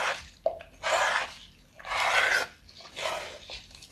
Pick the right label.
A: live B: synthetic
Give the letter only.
A